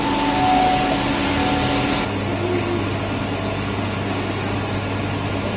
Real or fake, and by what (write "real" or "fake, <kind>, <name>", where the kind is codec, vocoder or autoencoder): real